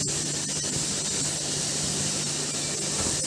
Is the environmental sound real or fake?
real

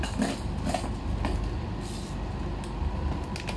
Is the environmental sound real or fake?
real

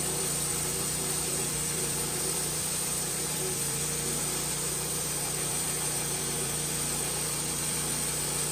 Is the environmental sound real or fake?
fake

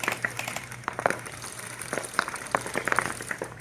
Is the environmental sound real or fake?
fake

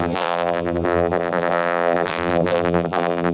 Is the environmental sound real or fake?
fake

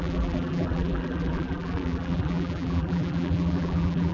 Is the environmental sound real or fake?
fake